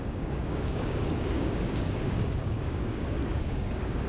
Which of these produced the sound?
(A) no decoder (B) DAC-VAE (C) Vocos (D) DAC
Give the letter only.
D